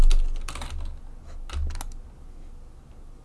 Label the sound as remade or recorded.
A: recorded